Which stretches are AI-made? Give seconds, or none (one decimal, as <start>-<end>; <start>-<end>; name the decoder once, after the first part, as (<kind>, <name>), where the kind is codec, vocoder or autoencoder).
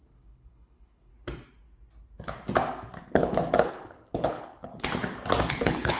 0.0-1.1 (codec, HILCodec); 3.0-4.7; 5.5-6.0